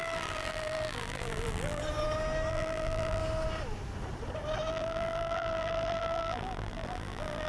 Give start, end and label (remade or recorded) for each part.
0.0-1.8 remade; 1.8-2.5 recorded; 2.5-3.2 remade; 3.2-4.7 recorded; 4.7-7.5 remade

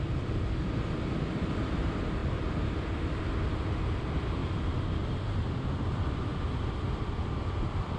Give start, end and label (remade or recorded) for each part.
0.0-6.3 remade; 6.3-7.1 recorded; 7.1-8.0 remade

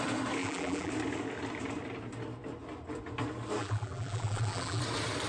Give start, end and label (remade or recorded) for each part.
0.0-0.4 recorded; 0.4-0.9 remade; 0.9-3.6 recorded; 3.6-4.8 remade; 4.8-5.3 recorded

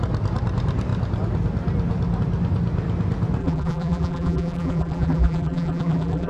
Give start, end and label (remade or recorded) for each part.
0.0-3.4 recorded; 3.4-6.3 remade

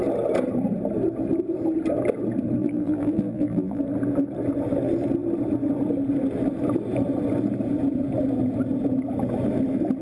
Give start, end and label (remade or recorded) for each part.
0.0-2.6 recorded; 2.6-3.8 remade; 3.8-10.0 recorded

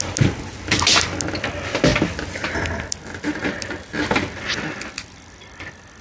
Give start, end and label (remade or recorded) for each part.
0.0-6.0 recorded